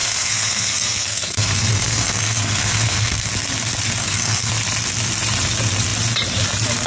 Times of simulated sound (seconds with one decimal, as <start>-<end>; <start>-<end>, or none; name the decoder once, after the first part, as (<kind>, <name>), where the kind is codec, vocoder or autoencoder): 0.0-3.3 (codec, SNAC); 4.0-4.5

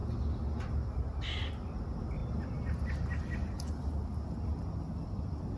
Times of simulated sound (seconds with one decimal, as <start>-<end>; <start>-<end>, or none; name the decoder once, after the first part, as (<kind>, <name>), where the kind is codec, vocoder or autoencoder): none

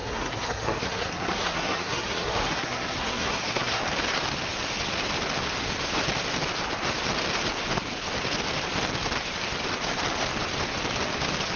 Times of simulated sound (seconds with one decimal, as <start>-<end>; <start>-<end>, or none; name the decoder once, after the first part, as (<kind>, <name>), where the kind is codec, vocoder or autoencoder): 0.0-3.8 (codec, SNAC)

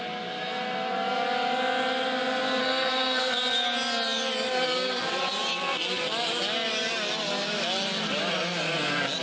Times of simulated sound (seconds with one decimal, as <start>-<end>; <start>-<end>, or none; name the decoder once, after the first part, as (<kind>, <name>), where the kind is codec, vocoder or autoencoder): 2.6-3.3 (codec, SNAC)

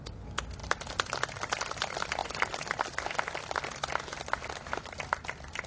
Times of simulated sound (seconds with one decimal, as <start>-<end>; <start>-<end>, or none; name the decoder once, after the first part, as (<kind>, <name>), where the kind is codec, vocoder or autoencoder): none

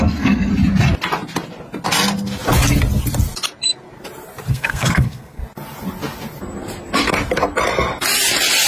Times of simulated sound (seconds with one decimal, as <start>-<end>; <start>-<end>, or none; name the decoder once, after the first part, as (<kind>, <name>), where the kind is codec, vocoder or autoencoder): 0.0-0.5 (codec, SNAC); 4.5-5.4

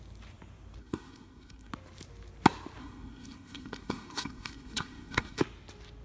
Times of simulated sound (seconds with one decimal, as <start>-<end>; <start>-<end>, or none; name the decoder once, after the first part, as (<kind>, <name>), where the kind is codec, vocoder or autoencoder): 0.8-1.7 (codec, SNAC); 2.8-5.4

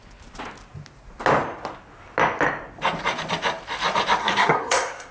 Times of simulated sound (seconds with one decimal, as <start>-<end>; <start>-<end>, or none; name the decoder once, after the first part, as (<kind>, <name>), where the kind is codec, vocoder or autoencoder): 4.2-5.1 (codec, SNAC)